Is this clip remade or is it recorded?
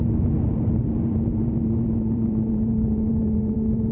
remade